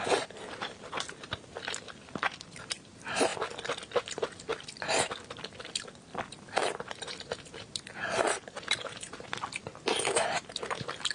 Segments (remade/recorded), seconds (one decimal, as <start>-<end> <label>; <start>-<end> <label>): 0.0-3.3 remade; 3.3-4.0 recorded; 4.0-4.5 remade; 4.5-5.7 recorded; 5.7-6.6 remade; 6.6-10.6 recorded; 10.6-11.1 remade